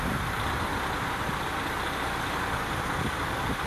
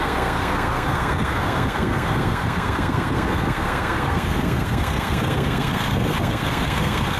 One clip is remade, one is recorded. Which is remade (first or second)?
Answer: second